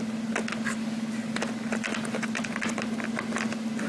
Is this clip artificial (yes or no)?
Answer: no